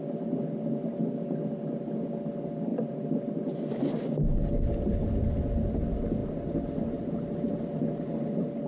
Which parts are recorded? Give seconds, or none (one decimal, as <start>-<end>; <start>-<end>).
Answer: 0.0-8.7